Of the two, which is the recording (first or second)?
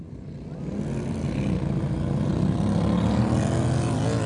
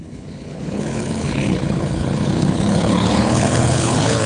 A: first